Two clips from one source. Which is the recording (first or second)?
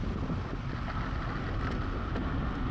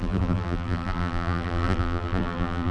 first